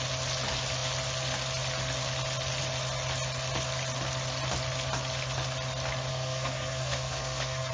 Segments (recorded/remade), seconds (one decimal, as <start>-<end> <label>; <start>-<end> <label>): 0.0-6.1 recorded; 6.1-7.7 remade